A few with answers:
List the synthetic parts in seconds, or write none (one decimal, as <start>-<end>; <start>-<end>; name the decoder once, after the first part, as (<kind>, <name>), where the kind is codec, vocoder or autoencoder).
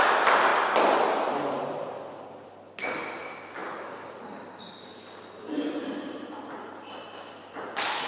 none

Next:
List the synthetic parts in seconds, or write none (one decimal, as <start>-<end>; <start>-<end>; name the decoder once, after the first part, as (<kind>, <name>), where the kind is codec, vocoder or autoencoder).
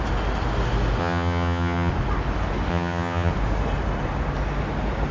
1.0-1.9 (vocoder, HiFi-GAN); 2.7-3.3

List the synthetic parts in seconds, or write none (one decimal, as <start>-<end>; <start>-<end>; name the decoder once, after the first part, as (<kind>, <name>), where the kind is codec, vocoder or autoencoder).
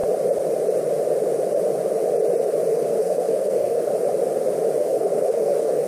2.7-3.9 (codec, SNAC); 4.8-5.9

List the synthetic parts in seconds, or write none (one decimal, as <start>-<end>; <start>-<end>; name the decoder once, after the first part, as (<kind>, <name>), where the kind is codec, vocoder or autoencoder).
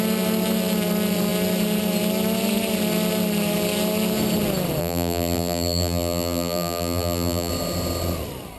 4.8-7.5 (vocoder, BigVGAN v2)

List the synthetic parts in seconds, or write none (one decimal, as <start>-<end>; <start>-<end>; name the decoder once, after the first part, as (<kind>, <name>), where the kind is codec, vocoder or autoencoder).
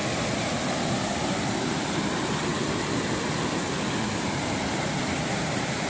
1.6-2.5 (vocoder, BigVGAN v2); 3.8-5.9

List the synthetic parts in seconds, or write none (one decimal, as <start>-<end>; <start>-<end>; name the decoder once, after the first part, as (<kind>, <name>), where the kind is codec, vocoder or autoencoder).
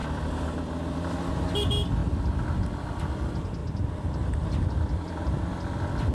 0.0-1.1 (vocoder, BigVGAN v2); 2.0-3.0; 3.6-5.5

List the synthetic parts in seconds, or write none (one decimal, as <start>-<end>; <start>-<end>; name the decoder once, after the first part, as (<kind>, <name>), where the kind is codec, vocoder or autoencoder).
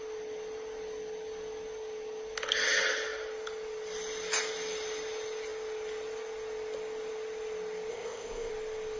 7.9-8.5 (codec, ZipCodec)